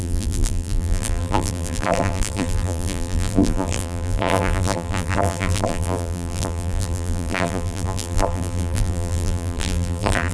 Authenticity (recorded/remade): remade